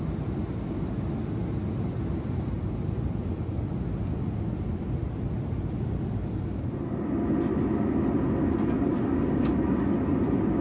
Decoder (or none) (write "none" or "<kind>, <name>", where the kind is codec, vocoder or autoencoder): none